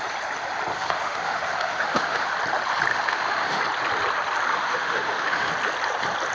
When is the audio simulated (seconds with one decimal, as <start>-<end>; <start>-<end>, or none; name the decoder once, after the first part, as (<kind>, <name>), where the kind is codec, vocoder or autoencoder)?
0.7-2.3 (autoencoder, DAC-VAE); 2.9-3.6; 4.5-5.5